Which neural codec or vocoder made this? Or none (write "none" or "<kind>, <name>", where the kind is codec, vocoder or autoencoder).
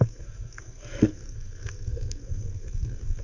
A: codec, SNAC